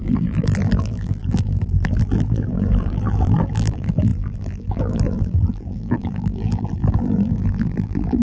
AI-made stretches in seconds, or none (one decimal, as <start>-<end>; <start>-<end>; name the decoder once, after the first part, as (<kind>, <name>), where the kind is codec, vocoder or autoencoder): 0.0-8.2 (vocoder, BigVGAN v2)